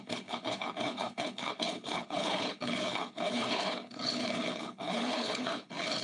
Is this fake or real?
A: fake